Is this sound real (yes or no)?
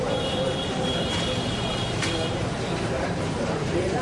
no